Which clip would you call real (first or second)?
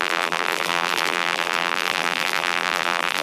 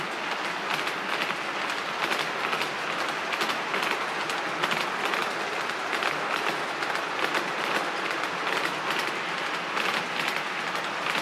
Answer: second